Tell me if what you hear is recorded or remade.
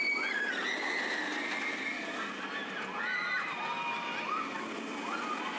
recorded